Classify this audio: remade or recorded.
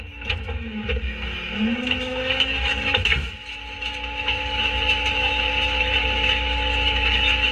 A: remade